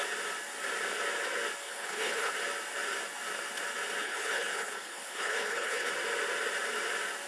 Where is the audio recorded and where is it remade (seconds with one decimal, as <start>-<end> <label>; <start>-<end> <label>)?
0.0-1.6 recorded; 1.6-2.3 remade; 2.3-4.0 recorded; 4.0-5.9 remade; 5.9-7.3 recorded